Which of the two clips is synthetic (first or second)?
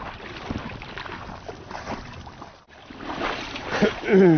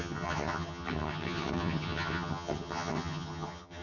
second